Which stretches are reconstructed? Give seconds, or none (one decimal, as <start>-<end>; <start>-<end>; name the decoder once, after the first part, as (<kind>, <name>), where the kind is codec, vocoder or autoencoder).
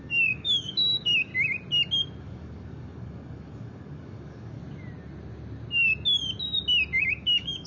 0.0-1.3 (codec, DAC); 2.2-4.6; 7.0-7.7